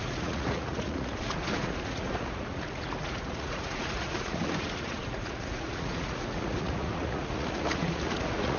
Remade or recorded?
remade